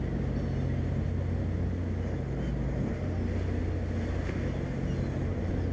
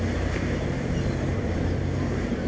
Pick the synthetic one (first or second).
second